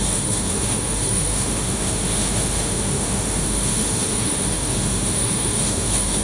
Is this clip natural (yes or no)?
no